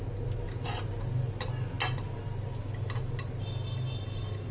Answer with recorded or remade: recorded